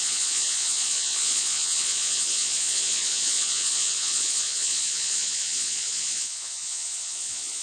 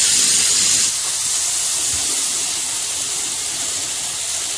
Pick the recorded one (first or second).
second